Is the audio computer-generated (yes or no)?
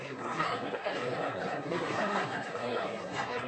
yes